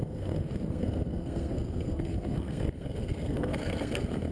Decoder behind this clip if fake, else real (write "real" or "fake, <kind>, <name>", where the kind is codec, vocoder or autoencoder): fake, codec, SNAC